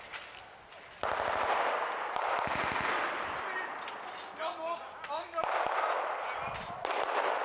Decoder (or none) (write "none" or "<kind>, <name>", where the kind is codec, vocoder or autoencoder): none